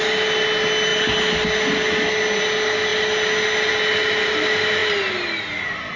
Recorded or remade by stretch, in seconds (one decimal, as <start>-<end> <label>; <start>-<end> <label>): 0.0-6.0 recorded